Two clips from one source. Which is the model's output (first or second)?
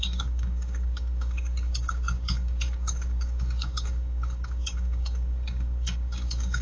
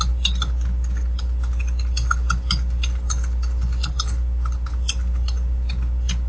first